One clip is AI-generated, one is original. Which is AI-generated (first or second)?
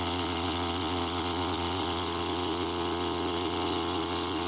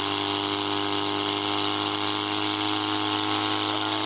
first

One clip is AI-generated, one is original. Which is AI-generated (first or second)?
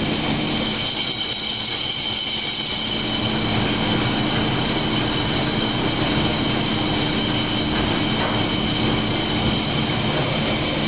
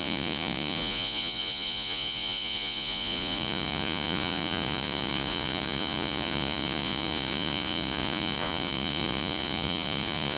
second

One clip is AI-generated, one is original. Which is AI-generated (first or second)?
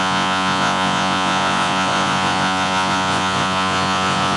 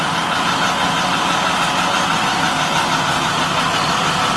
first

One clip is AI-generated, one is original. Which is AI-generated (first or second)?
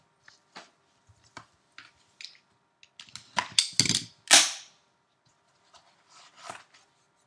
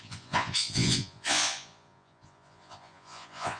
second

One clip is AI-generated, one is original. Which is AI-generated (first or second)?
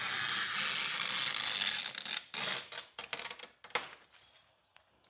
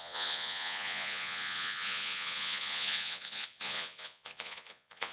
second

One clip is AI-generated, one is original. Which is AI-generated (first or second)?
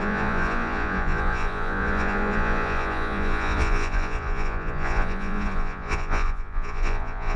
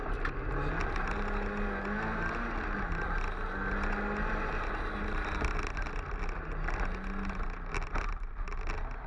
first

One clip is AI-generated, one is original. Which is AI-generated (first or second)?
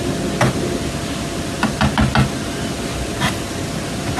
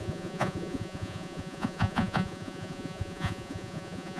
second